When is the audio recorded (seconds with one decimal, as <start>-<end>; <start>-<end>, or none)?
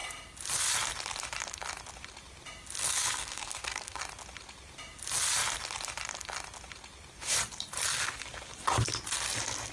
0.0-2.8; 4.0-9.7